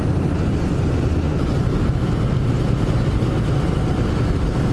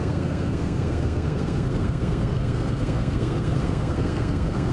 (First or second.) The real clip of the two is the first